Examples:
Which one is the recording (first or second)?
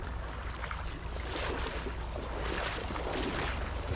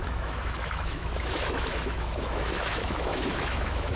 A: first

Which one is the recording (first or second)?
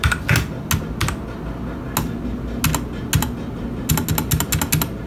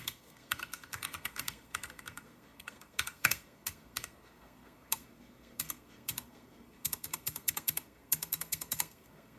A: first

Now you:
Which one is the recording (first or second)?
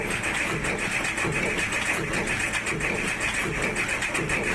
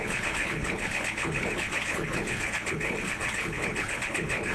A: first